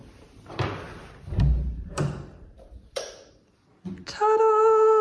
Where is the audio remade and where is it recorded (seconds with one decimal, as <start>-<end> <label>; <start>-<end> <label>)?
0.0-3.0 remade; 3.0-5.0 recorded